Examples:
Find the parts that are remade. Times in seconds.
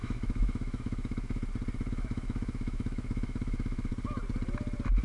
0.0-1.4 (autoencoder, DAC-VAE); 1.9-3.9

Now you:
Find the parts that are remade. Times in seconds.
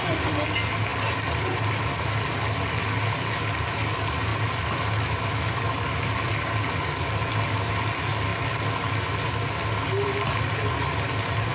4.3-7.3 (vocoder, BigVGAN v2)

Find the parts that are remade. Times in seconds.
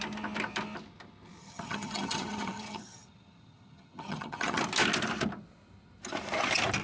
1.4-4.6 (vocoder, HiFi-GAN)